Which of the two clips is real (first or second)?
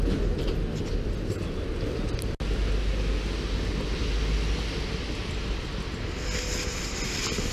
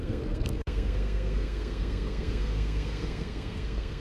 first